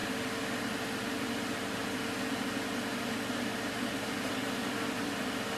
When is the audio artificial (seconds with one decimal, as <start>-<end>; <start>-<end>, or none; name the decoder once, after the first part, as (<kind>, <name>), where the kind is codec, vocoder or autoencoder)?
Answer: none